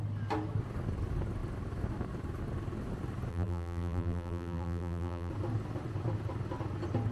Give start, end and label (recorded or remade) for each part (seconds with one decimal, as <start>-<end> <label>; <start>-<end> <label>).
0.0-3.3 recorded; 3.3-5.3 remade; 5.3-7.1 recorded